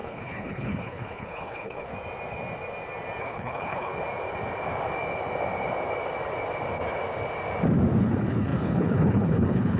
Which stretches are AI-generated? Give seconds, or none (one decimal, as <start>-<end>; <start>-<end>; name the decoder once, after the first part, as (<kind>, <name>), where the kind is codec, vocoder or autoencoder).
0.0-1.9 (codec, HILCodec); 3.2-3.9; 8.0-9.8